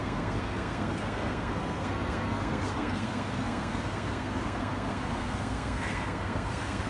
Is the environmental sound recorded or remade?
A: remade